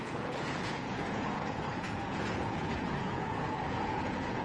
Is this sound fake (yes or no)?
yes